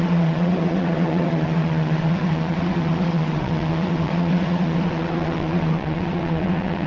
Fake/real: fake